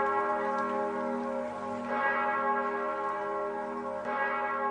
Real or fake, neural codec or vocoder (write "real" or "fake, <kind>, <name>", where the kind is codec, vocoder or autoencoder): real